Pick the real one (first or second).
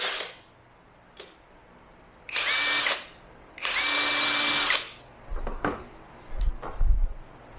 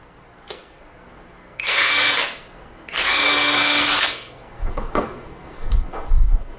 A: first